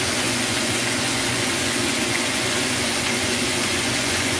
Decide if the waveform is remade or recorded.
remade